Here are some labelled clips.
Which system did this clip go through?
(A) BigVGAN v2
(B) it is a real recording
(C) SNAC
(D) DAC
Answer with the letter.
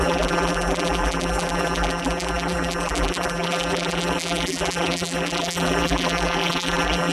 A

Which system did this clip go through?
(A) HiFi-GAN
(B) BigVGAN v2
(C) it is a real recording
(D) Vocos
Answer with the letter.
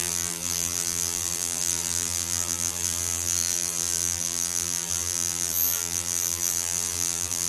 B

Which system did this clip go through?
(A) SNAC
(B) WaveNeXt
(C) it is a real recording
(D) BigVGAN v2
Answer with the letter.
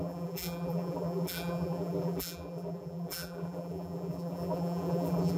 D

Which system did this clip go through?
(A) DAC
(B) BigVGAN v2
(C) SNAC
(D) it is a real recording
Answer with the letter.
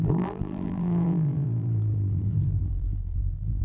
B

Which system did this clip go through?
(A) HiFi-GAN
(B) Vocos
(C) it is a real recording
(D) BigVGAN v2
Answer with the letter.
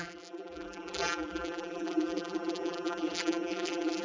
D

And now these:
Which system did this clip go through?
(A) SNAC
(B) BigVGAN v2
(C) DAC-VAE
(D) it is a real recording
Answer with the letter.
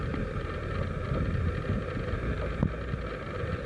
D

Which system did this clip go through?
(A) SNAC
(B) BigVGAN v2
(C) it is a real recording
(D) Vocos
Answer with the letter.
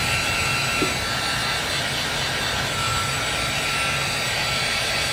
C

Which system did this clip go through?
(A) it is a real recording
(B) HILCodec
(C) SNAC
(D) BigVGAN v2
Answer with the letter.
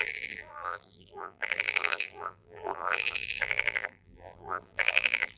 D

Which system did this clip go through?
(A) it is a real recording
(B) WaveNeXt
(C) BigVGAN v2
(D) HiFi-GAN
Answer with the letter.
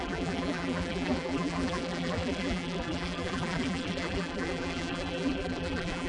C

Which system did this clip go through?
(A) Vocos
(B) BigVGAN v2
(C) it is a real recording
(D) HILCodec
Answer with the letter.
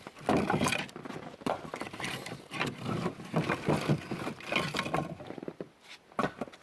C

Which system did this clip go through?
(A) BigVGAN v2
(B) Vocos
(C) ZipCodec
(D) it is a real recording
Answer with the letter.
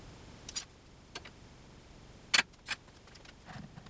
D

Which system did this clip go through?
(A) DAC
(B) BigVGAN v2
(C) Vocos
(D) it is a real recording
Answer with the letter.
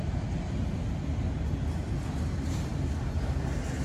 D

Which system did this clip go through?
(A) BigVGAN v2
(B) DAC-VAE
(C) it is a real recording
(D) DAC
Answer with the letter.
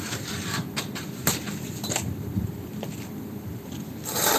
A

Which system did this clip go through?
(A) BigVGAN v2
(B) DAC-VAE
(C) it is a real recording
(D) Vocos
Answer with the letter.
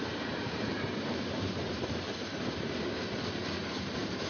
A